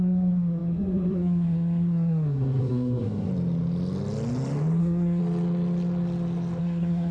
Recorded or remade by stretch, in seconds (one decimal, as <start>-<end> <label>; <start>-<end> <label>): 0.0-3.3 remade; 3.3-4.8 recorded; 4.8-5.2 remade; 5.2-6.6 recorded; 6.6-7.1 remade

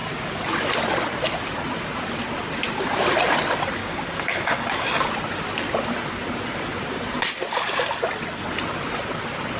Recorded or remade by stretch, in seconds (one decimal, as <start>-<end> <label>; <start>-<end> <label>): 0.0-3.8 recorded; 3.8-5.1 remade; 5.1-9.6 recorded

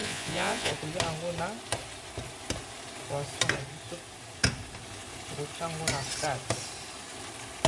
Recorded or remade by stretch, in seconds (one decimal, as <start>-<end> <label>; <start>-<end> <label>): 0.0-0.7 remade; 0.7-7.7 recorded

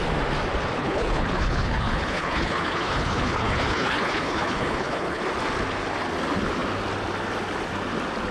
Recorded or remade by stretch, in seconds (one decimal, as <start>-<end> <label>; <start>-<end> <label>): 0.0-0.8 recorded; 0.8-5.2 remade; 5.2-8.3 recorded

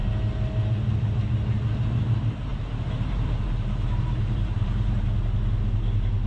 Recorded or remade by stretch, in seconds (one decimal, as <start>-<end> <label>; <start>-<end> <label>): 0.0-2.5 recorded; 2.5-5.0 remade; 5.0-6.3 recorded

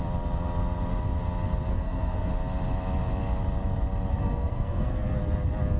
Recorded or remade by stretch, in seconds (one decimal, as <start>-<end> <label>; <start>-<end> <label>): 0.0-1.7 recorded; 1.7-2.3 remade; 2.3-4.1 recorded; 4.1-5.2 remade; 5.2-5.8 recorded

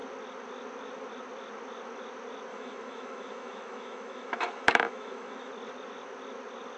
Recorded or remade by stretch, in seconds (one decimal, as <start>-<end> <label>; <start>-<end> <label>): 0.0-2.5 recorded; 2.5-5.5 remade; 5.5-6.8 recorded